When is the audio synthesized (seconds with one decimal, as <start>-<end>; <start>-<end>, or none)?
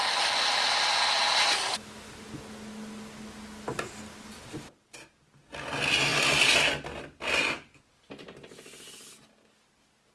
none